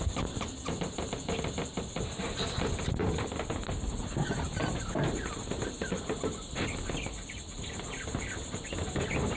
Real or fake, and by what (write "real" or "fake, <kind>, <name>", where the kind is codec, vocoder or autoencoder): real